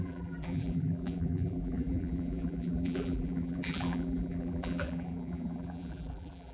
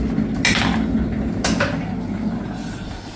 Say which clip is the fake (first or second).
first